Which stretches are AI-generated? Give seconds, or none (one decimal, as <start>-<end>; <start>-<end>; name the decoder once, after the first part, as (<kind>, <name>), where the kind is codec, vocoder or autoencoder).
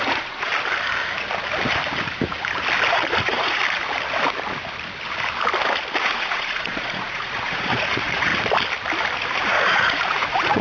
0.0-0.5 (vocoder, Vocos); 2.9-3.6; 6.1-8.3; 9.4-10.6